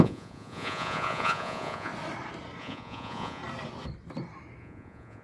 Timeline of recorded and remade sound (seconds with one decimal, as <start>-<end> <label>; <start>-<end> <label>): 0.0-1.9 remade; 1.9-2.6 recorded; 2.6-3.4 remade; 3.4-4.6 recorded; 4.6-5.2 remade